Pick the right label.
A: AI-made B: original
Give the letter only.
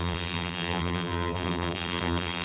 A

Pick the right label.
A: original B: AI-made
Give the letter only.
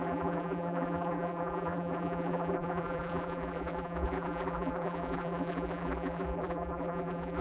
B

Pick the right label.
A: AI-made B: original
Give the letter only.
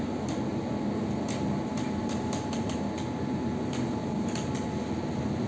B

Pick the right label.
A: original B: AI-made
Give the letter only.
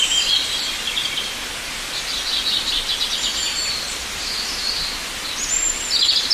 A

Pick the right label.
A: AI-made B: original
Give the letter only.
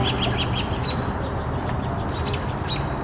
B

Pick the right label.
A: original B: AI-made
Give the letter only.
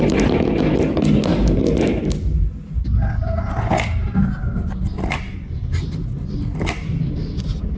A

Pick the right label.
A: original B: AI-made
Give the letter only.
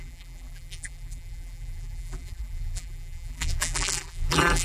B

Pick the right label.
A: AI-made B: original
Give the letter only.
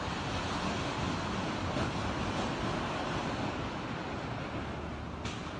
B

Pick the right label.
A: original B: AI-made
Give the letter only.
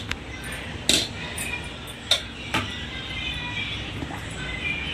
A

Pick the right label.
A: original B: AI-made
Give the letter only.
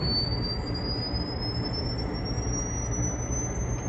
A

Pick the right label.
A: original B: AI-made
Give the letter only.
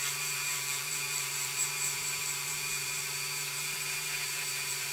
B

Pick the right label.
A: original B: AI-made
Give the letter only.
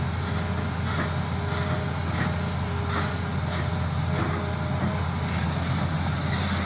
A